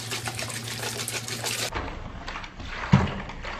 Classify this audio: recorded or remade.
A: recorded